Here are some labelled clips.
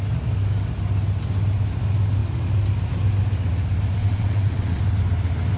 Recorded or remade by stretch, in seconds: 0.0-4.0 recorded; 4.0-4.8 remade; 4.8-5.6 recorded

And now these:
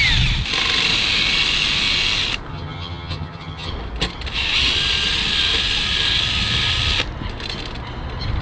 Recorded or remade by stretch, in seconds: 0.0-2.5 recorded; 2.5-3.7 remade; 3.7-8.4 recorded